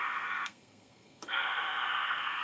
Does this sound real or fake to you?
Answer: fake